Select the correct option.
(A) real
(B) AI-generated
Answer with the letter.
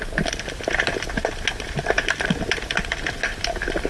A